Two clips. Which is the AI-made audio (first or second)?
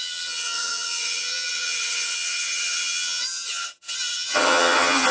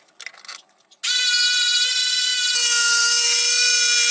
first